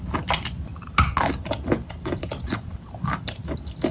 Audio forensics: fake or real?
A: real